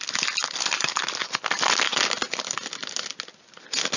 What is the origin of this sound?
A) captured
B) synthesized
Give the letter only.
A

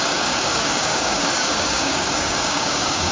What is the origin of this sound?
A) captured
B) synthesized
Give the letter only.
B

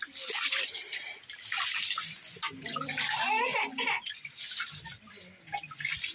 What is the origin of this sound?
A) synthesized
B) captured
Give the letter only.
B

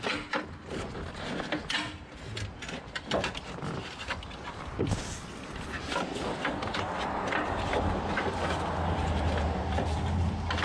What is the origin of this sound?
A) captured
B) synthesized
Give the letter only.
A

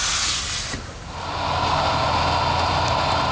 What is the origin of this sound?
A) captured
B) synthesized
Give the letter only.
A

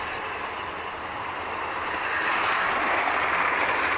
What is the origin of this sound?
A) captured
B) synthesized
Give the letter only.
A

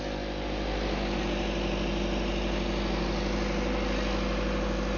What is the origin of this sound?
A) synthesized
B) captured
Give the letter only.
B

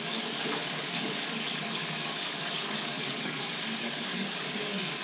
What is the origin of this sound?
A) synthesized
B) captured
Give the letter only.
A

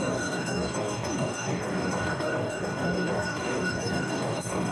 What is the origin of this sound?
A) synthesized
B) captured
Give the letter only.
A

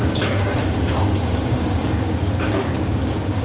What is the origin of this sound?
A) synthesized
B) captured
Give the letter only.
A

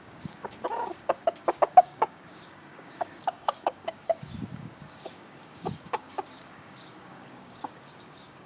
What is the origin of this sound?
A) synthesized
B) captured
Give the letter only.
A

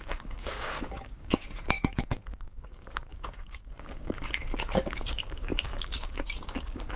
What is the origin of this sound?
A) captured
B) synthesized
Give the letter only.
B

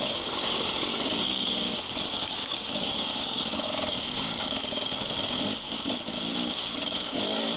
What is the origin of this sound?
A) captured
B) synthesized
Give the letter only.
B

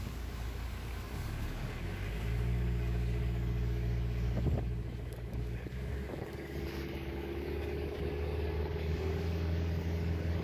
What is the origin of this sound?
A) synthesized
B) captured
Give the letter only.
A